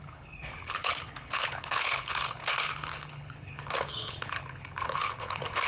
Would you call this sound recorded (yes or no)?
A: no